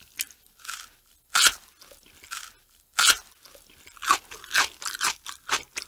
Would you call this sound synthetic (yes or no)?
no